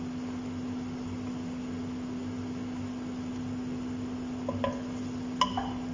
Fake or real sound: real